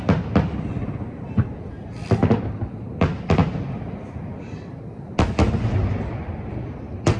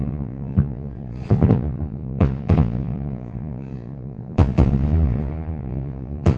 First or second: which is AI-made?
second